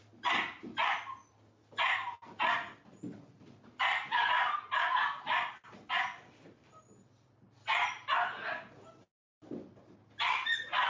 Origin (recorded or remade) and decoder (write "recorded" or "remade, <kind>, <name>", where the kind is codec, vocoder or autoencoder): recorded